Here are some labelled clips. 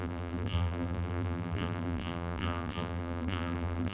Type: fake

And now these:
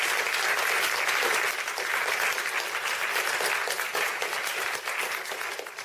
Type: real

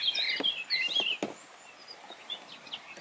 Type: real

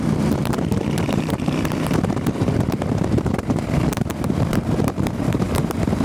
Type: fake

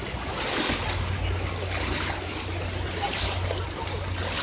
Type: real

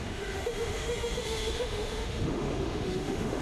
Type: fake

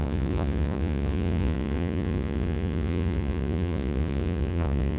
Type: fake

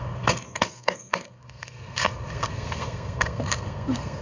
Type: fake